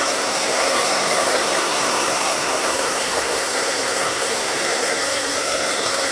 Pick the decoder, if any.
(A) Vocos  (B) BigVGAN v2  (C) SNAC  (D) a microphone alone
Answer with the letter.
C